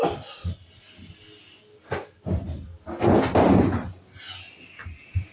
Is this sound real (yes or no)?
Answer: yes